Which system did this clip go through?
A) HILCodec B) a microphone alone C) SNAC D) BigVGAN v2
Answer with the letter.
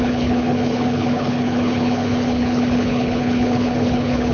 A